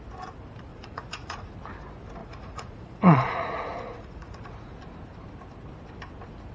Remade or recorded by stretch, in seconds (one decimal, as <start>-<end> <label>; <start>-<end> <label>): 0.0-0.7 recorded; 0.7-1.5 remade; 1.5-2.2 recorded; 2.2-4.8 remade; 4.8-6.5 recorded